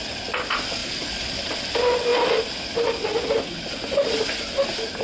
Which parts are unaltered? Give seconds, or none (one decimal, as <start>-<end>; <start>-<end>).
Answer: 0.0-0.8; 1.5-5.0